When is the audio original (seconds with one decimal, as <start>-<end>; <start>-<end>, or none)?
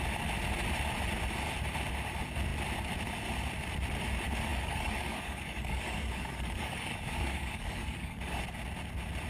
0.0-4.5; 8.4-9.3